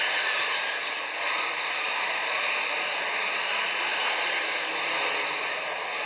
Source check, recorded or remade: recorded